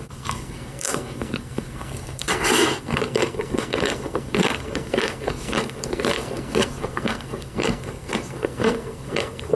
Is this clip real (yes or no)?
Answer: no